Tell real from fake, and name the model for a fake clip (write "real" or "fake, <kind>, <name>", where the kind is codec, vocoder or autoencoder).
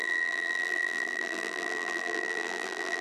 fake, vocoder, BigVGAN v2